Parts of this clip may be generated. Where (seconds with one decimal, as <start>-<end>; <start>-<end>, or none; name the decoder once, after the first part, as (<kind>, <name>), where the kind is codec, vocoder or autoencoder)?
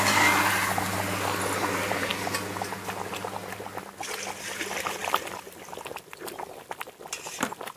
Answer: none